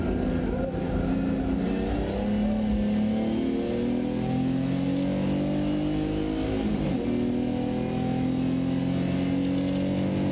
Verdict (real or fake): real